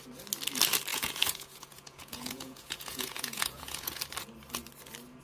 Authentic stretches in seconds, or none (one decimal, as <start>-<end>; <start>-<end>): 0.0-0.9; 4.0-5.2